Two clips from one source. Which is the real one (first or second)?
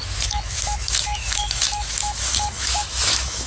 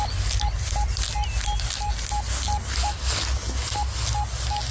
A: second